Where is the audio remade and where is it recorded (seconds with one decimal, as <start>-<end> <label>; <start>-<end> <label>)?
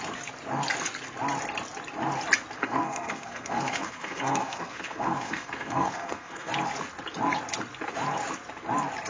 0.0-2.6 recorded; 2.6-6.5 remade; 6.5-9.1 recorded